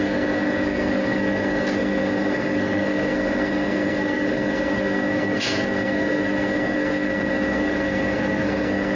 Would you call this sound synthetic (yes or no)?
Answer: yes